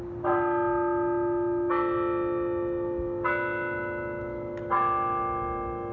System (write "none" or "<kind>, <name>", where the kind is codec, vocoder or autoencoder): none